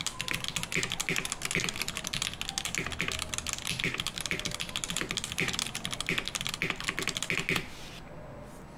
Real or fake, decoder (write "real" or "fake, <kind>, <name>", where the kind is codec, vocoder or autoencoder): real